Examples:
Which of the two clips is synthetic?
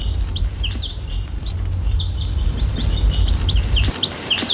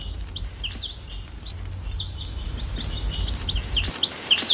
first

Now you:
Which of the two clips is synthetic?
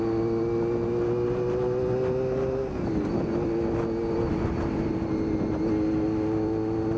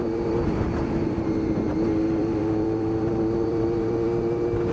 second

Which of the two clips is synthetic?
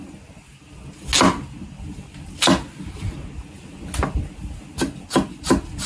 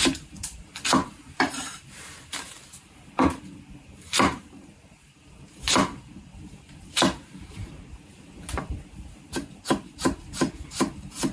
second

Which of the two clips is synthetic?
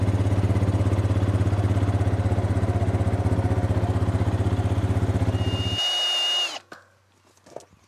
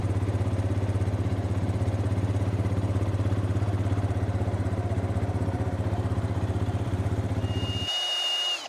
second